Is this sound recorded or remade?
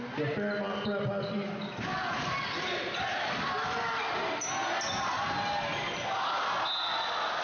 recorded